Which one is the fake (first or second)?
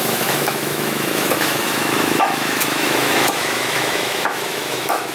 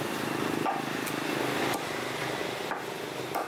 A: first